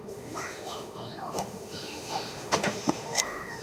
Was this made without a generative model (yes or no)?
no